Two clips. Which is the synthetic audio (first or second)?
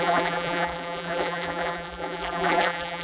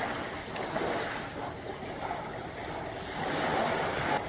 first